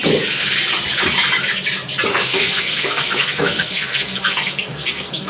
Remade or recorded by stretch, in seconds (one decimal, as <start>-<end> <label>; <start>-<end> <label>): 0.0-2.1 recorded; 2.1-5.3 remade